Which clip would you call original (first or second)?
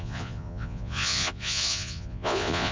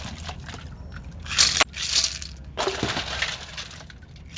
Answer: second